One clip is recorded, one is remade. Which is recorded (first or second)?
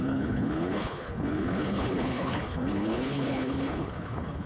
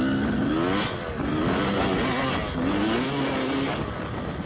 second